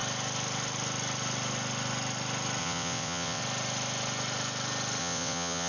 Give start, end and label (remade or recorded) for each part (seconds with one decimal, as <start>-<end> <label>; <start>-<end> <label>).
0.0-2.6 recorded; 2.6-3.4 remade; 3.4-5.0 recorded; 5.0-5.7 remade